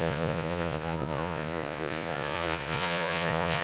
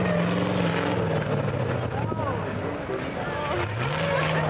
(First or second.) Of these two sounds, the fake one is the first